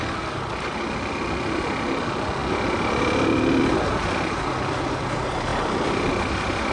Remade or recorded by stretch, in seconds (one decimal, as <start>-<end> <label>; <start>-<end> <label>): 0.0-6.7 recorded